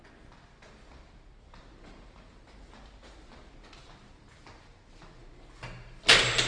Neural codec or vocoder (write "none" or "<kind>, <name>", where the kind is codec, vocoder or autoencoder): none